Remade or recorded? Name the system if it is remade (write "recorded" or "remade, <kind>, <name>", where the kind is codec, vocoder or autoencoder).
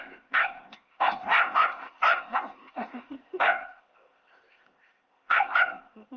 remade, codec, ZipCodec